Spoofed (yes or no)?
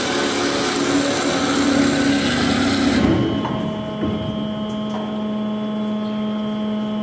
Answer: no